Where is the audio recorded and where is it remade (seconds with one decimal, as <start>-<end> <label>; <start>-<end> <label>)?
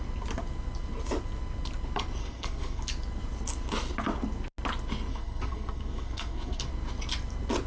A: 0.0-2.2 recorded; 2.2-2.8 remade; 2.8-5.1 recorded; 5.1-6.7 remade; 6.7-7.7 recorded